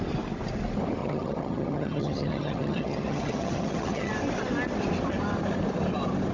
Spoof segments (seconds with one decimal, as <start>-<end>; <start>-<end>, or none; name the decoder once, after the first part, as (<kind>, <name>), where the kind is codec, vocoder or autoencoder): 1.0-4.1 (vocoder, HiFi-GAN)